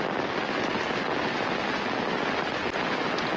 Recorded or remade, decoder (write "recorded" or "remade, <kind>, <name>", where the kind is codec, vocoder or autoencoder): recorded